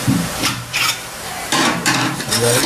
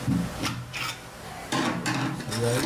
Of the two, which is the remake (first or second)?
first